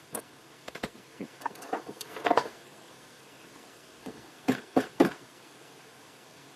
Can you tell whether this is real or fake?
fake